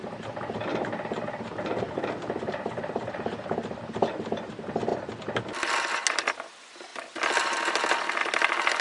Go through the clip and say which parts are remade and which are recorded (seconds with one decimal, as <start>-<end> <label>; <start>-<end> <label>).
0.0-0.7 recorded; 0.7-4.5 remade; 4.5-8.8 recorded